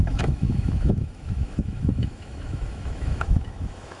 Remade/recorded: remade